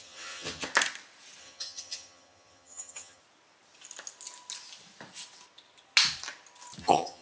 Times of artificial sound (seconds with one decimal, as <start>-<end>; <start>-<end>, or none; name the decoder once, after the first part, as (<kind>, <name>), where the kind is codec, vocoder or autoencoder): 0.0-0.7 (vocoder, HiFi-GAN); 1.4-3.2; 6.8-7.2